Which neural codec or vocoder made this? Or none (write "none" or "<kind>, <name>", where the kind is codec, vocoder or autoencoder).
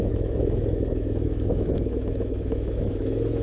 autoencoder, DAC-VAE